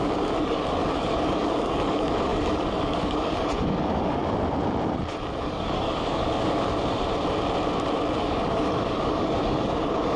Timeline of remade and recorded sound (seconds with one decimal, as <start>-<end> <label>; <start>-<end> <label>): 0.0-4.2 remade; 4.2-5.4 recorded; 5.4-6.7 remade; 6.7-8.2 recorded; 8.2-10.2 remade